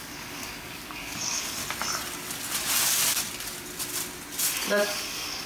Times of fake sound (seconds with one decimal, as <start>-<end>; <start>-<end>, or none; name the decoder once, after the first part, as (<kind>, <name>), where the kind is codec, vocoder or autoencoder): 0.0-1.6 (codec, DAC); 4.6-5.5